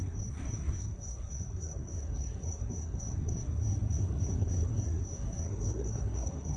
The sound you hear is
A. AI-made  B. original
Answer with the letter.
A